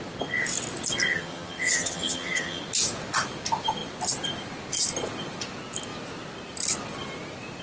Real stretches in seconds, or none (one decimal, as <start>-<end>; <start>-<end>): 0.0-1.1; 2.6-7.6